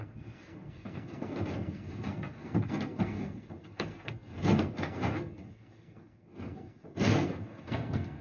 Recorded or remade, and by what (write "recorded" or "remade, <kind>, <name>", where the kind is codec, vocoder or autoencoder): remade, codec, SNAC